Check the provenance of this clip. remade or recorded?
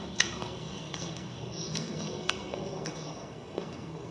remade